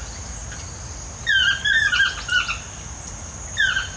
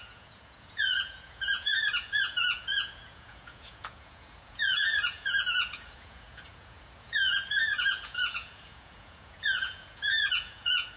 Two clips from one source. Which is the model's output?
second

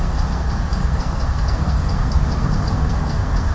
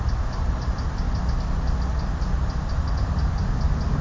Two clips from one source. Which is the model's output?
first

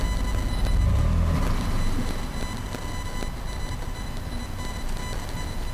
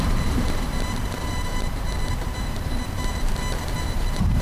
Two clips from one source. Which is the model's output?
second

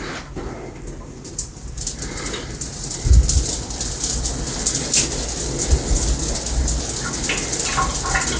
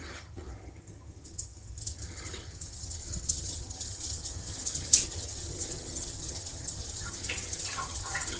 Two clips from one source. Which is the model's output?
second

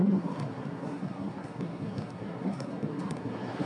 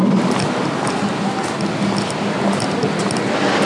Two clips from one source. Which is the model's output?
first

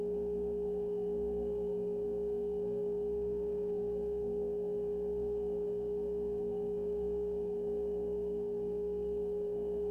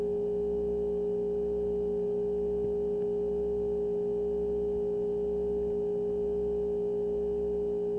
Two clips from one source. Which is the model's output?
first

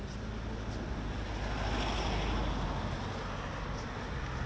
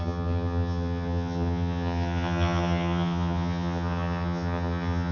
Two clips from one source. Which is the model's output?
second